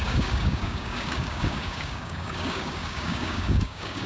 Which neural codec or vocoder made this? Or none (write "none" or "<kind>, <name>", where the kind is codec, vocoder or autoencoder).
codec, DAC